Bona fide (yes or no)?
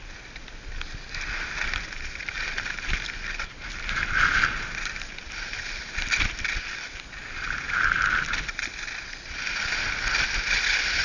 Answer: yes